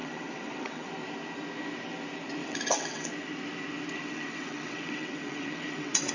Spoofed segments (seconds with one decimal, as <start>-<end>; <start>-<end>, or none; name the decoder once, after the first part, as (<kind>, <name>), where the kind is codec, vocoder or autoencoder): 0.0-0.9 (vocoder, WaveNeXt); 2.4-3.1; 4.0-6.1